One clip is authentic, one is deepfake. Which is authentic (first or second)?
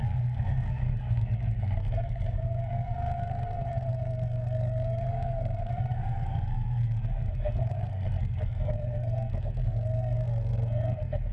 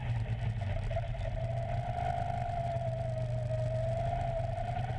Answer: second